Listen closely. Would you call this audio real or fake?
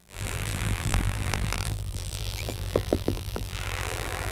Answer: fake